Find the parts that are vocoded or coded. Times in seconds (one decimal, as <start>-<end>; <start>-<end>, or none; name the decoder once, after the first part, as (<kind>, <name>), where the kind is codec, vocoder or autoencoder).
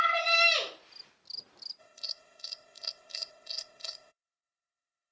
1.8-5.1 (codec, ZipCodec)